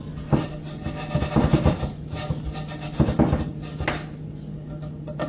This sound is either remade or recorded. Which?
recorded